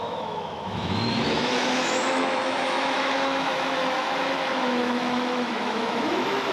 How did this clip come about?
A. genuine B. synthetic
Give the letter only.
B